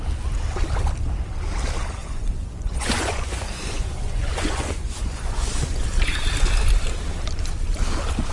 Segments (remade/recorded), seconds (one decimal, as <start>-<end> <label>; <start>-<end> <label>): 0.0-2.0 recorded; 2.0-5.5 remade; 5.5-8.3 recorded